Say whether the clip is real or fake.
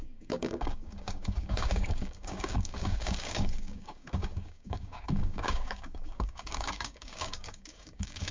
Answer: fake